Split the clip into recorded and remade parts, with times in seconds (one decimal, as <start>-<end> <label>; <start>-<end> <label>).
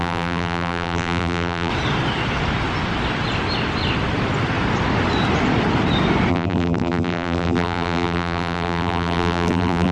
0.0-1.7 remade; 1.7-6.3 recorded; 6.3-9.9 remade